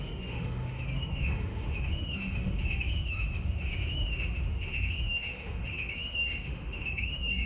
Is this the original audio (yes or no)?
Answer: no